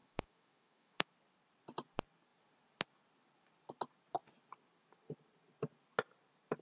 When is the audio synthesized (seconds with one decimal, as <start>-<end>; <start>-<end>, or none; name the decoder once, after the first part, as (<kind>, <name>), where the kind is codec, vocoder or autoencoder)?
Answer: 0.0-1.1 (autoencoder, DAC-VAE)